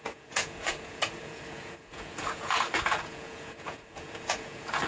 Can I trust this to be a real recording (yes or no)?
no